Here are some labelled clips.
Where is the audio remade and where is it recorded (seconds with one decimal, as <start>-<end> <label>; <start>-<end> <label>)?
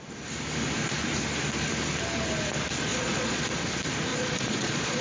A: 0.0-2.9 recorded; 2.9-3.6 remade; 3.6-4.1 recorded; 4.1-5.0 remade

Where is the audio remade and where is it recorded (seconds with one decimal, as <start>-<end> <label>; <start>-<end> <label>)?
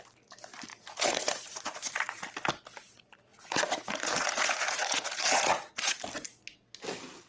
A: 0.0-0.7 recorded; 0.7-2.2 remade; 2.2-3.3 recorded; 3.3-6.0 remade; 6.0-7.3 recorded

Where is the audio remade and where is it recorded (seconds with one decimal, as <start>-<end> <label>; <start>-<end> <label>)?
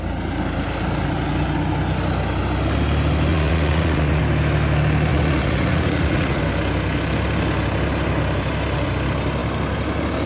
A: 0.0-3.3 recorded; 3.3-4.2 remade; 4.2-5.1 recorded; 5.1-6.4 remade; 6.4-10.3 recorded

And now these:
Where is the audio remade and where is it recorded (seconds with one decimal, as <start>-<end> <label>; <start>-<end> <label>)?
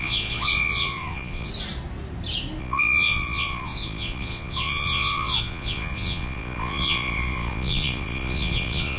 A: 0.0-1.5 remade; 1.5-2.6 recorded; 2.6-9.0 remade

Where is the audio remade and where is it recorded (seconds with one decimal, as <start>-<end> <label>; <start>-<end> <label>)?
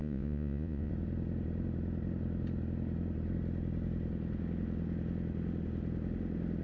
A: 0.0-0.9 remade; 0.9-6.6 recorded